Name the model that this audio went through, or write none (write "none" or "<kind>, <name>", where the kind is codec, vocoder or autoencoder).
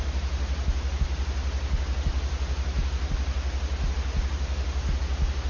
none